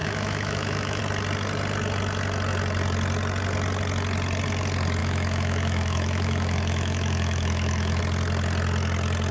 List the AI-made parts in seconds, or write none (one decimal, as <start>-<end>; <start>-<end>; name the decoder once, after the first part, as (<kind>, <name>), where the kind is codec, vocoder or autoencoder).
0.0-1.0 (autoencoder, DAC-VAE); 5.0-8.0